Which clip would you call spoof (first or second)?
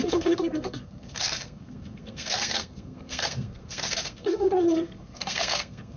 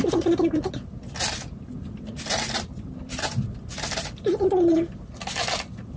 first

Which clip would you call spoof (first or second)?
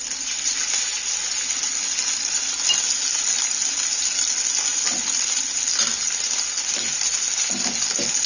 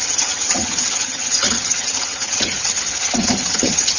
second